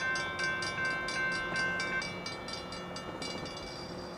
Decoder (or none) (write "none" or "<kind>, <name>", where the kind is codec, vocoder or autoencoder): none